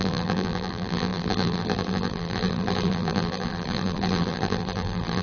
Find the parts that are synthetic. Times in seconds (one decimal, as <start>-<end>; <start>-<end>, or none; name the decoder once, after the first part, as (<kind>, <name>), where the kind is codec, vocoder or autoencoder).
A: 0.0-5.2 (vocoder, BigVGAN v2)